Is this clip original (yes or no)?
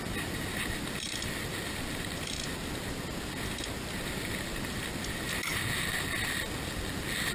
yes